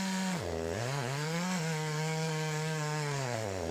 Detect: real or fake fake